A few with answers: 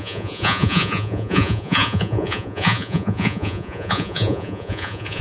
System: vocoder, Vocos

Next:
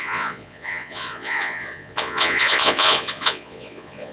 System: vocoder, Vocos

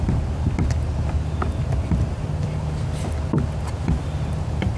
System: none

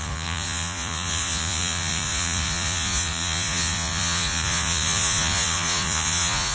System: vocoder, Vocos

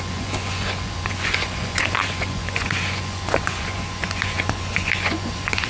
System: vocoder, Vocos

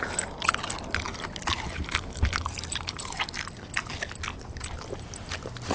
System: none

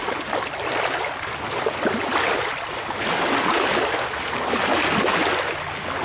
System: none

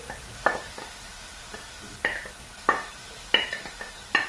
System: none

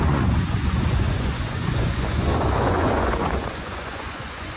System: vocoder, Vocos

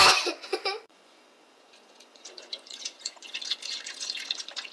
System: vocoder, Vocos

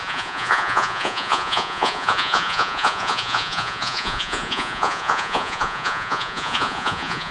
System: vocoder, Vocos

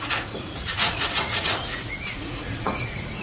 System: vocoder, Vocos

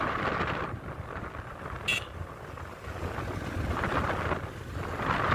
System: none